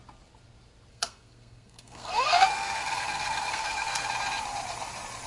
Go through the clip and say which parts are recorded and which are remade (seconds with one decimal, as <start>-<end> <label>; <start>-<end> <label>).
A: 0.0-0.9 recorded; 0.9-4.1 remade; 4.1-5.3 recorded